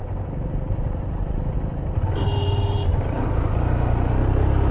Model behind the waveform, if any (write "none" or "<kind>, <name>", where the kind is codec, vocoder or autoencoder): none